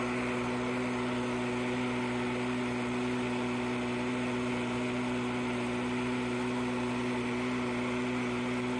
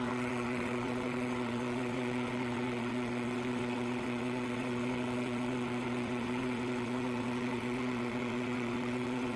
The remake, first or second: second